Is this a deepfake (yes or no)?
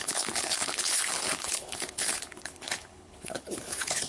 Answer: yes